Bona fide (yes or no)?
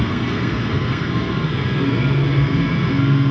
no